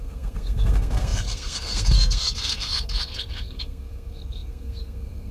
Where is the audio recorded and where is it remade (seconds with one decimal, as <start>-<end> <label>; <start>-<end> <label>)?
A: 0.0-5.3 remade

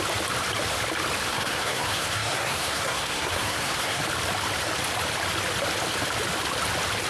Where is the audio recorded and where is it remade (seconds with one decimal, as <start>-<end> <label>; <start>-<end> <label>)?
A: 0.0-1.3 recorded; 1.3-4.0 remade; 4.0-7.1 recorded

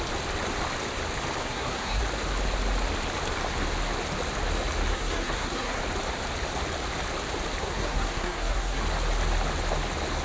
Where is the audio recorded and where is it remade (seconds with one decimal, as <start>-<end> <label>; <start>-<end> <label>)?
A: 0.0-1.4 recorded; 1.4-2.0 remade; 2.0-4.9 recorded; 4.9-5.8 remade; 5.8-7.6 recorded; 7.6-8.8 remade; 8.8-10.2 recorded

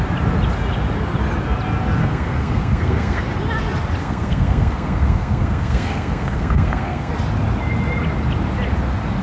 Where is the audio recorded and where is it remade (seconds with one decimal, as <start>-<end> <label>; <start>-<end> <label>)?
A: 0.0-2.0 recorded; 2.0-3.2 remade; 3.2-4.0 recorded; 4.0-7.1 remade; 7.1-9.2 recorded